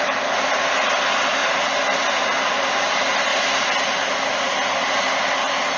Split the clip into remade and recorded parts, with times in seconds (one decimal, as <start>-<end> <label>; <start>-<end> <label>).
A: 0.0-5.8 recorded